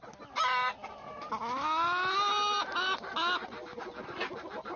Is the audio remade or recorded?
recorded